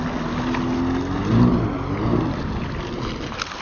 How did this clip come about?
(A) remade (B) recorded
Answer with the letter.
B